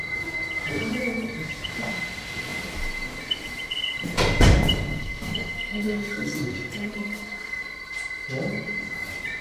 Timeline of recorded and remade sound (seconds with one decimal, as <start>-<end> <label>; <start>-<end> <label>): 0.0-4.9 recorded; 4.9-7.6 remade; 7.6-9.4 recorded